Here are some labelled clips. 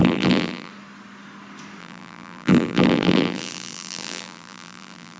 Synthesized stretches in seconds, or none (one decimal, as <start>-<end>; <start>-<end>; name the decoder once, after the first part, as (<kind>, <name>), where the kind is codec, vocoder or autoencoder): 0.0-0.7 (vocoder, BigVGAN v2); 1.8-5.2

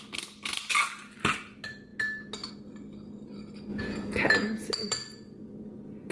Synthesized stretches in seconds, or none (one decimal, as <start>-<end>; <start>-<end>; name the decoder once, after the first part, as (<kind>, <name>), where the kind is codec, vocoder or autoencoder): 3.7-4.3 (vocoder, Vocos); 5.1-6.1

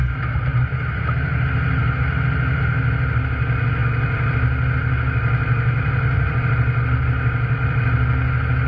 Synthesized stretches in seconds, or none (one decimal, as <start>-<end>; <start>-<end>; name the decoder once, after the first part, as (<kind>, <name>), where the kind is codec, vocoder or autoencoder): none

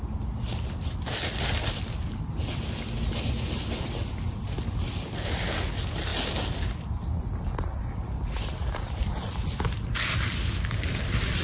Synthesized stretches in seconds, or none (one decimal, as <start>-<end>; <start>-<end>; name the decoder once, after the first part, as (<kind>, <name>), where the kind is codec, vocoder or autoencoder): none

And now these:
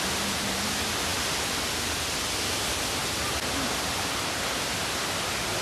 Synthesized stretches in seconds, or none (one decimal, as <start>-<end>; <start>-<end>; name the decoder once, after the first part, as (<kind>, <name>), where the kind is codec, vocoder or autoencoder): 3.0-4.6 (vocoder, BigVGAN v2)

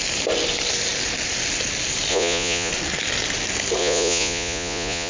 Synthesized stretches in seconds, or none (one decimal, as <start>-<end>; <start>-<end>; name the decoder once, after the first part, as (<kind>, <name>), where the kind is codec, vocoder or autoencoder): 2.1-2.7 (vocoder, Vocos); 3.8-5.1

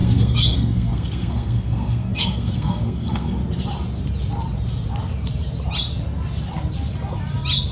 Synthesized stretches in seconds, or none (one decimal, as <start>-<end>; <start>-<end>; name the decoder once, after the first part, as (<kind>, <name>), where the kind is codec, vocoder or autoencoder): 0.0-3.4 (codec, SNAC)